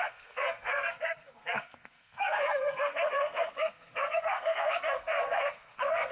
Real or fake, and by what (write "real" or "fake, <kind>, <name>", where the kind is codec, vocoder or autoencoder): fake, codec, SNAC